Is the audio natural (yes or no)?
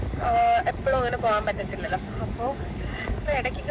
no